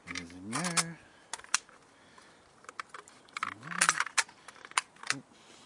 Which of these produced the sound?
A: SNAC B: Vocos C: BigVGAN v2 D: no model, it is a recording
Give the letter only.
D